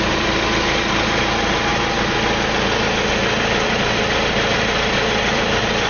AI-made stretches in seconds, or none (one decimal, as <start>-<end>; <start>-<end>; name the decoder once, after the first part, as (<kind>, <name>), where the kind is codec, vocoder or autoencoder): 0.0-1.7 (vocoder, BigVGAN v2); 5.2-5.9